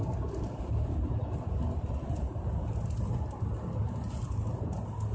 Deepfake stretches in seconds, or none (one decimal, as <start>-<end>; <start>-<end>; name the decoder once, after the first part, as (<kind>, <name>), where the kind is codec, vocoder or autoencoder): none